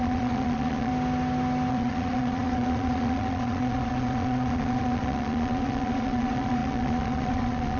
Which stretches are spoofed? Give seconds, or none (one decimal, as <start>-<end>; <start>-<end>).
0.0-0.9; 1.7-7.8